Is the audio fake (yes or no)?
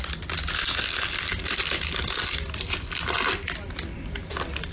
no